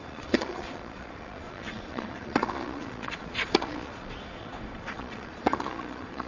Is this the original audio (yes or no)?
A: no